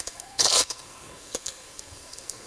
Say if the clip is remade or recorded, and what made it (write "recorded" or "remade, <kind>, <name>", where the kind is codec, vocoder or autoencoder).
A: remade, codec, SNAC